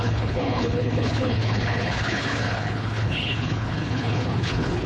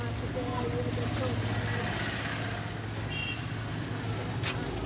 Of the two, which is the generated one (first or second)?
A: first